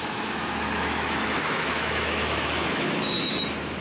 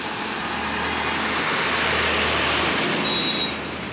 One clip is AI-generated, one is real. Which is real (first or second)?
second